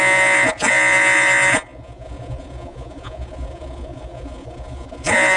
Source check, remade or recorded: remade